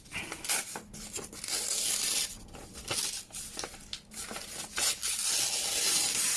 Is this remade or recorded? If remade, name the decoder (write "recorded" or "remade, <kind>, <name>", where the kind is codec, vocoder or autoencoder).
recorded